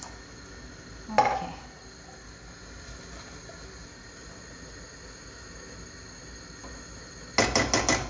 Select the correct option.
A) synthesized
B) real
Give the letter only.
B